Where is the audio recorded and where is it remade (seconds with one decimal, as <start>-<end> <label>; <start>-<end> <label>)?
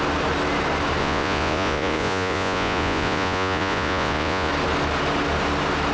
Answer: 0.0-1.0 recorded; 1.0-4.5 remade; 4.5-5.9 recorded